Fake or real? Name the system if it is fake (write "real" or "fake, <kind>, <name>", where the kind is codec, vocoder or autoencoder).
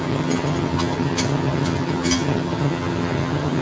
fake, vocoder, HiFi-GAN